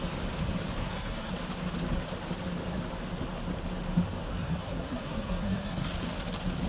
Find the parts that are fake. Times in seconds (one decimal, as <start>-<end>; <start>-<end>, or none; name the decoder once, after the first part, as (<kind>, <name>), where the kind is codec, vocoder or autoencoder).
0.8-1.3 (codec, SNAC); 4.3-5.9